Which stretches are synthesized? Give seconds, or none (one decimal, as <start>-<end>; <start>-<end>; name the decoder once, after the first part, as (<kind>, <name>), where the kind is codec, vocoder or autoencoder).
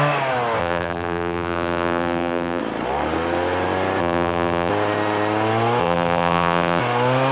0.6-2.6 (vocoder, BigVGAN v2); 4.0-4.7; 5.8-6.8